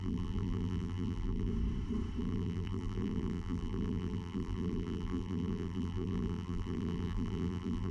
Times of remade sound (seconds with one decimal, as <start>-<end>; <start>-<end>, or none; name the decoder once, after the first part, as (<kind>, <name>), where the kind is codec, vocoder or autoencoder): 0.0-1.5 (vocoder, BigVGAN v2); 2.2-7.9